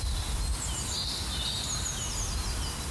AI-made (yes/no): no